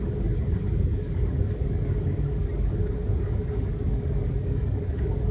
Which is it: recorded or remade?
remade